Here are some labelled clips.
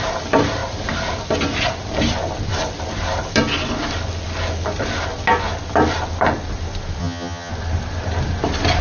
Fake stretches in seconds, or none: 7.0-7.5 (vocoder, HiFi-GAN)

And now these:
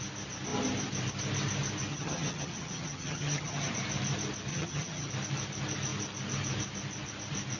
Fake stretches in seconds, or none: 1.9-3.7 (vocoder, HiFi-GAN); 4.5-5.1

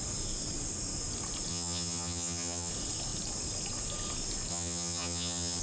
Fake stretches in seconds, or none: 1.5-2.7 (vocoder, HiFi-GAN); 4.5-5.6

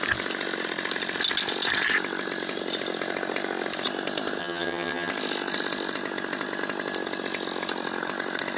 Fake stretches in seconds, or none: 4.4-5.1 (vocoder, HiFi-GAN)

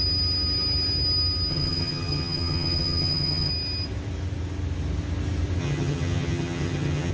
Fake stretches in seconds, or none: 1.5-3.5 (vocoder, HiFi-GAN); 5.6-7.1

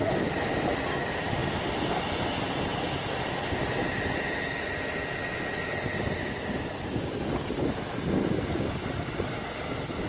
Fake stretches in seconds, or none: none

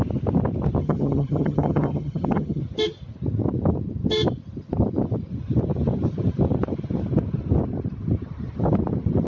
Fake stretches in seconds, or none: 0.8-2.6 (vocoder, HiFi-GAN)